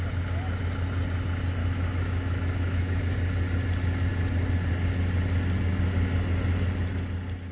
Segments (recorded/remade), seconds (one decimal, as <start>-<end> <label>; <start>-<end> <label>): 0.0-1.6 recorded; 1.6-3.0 remade; 3.0-7.5 recorded